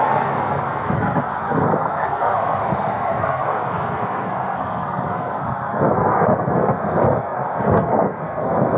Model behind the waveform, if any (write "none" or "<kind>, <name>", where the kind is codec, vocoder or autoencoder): codec, SNAC